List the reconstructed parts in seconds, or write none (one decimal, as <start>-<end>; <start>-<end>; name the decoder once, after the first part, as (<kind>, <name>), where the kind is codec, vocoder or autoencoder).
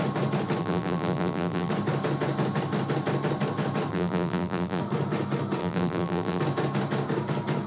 0.6-1.7 (vocoder, BigVGAN v2); 3.9-4.8; 5.6-6.4